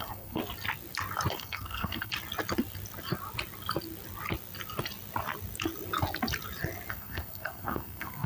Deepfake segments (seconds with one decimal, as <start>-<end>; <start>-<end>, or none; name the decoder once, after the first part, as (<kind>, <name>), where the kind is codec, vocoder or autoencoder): 0.0-0.4 (codec, SNAC); 1.3-2.1; 6.9-8.3